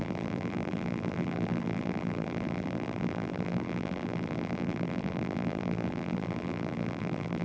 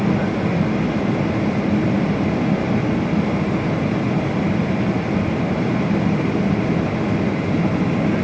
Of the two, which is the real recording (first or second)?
second